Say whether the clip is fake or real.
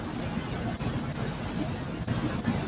real